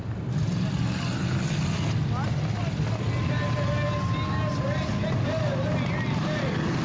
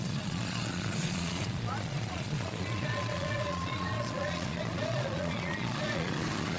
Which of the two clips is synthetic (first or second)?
second